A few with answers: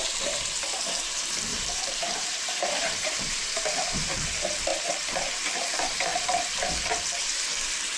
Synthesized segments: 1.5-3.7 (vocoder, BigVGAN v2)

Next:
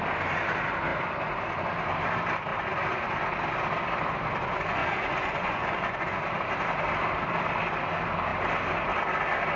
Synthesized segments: 4.8-6.2 (vocoder, Vocos)

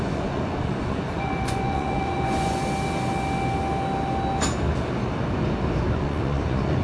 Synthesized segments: 0.0-2.6 (vocoder, Vocos); 5.9-6.8

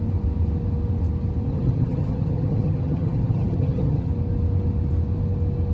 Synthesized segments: 1.5-4.1 (vocoder, HiFi-GAN)

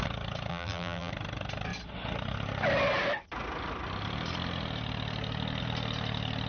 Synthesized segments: 0.5-1.1 (vocoder, BigVGAN v2)